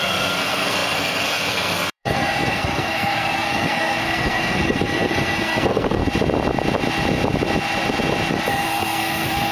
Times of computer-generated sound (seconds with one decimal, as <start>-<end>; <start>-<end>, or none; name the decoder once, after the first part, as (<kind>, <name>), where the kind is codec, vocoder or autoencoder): 0.0-6.0 (codec, SNAC); 8.5-9.5